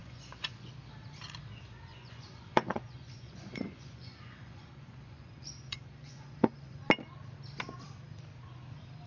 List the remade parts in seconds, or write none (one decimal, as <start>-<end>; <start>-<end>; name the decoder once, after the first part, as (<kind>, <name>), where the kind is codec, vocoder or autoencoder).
0.0-0.7 (vocoder, Vocos); 1.9-6.8